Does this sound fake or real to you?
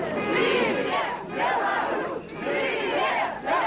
real